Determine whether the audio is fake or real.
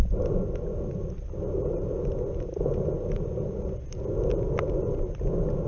real